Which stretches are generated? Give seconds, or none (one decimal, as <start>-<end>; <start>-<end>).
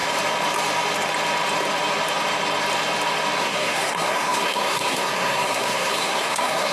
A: 3.4-6.7